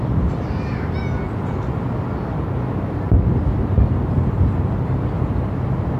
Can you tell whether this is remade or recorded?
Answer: recorded